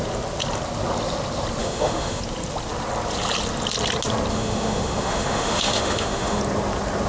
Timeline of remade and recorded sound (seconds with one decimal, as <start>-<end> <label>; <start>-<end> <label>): 0.0-1.6 recorded; 1.6-2.2 remade; 2.2-4.3 recorded; 4.3-6.4 remade; 6.4-7.1 recorded